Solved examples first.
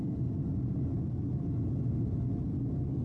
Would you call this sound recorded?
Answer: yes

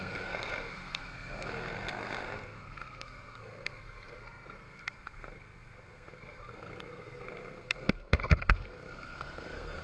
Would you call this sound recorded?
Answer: no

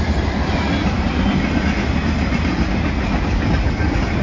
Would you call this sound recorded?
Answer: yes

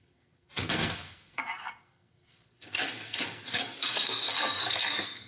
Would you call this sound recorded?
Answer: no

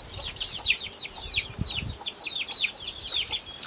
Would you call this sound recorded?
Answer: yes